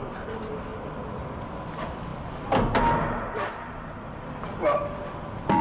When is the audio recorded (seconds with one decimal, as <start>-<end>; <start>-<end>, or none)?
0.0-5.6